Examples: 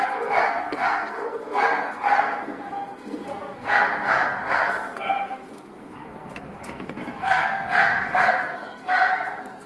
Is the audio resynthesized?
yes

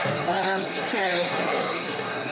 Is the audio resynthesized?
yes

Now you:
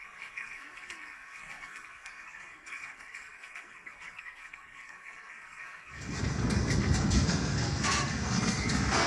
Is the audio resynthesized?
yes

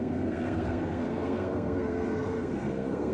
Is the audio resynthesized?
yes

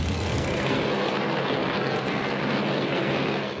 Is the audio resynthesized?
yes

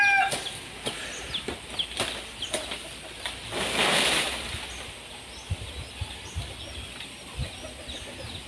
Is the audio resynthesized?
no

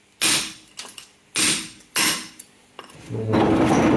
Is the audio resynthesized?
no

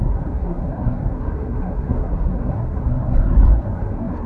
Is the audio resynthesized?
yes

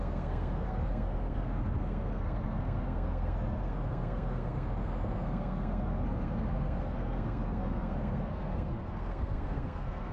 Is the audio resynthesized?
yes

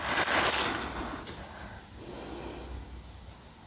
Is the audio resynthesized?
no